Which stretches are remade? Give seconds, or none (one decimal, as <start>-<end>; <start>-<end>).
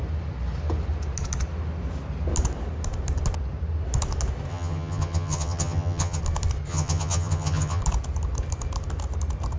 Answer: 4.5-6.2; 6.7-7.8